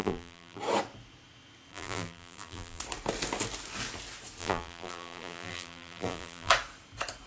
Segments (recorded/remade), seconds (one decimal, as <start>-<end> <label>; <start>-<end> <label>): 0.0-0.6 remade; 0.6-1.7 recorded; 1.7-2.8 remade; 2.8-4.4 recorded; 4.4-6.5 remade; 6.5-7.3 recorded